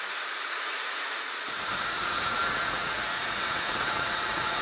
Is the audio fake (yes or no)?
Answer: yes